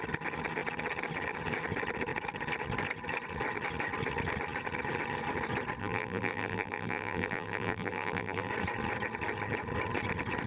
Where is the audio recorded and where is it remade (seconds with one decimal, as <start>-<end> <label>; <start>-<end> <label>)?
0.0-5.8 recorded; 5.8-8.5 remade; 8.5-10.5 recorded